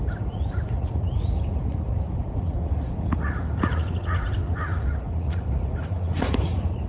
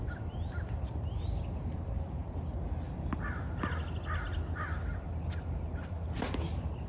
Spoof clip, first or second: first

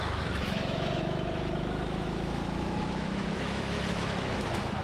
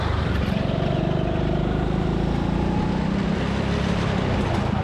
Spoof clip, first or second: first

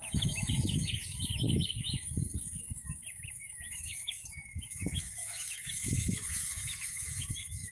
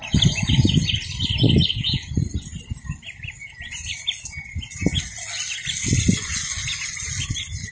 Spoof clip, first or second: first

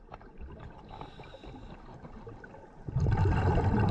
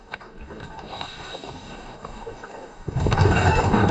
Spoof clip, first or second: second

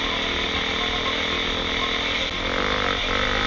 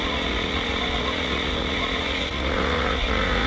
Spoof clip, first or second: second